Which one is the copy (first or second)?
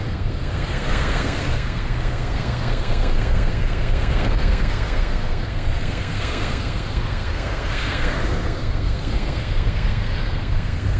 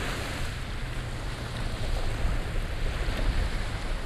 first